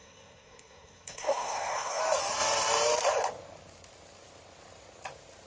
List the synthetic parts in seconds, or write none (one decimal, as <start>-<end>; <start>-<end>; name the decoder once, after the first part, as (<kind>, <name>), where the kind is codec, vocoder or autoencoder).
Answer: 0.0-2.0 (codec, SNAC)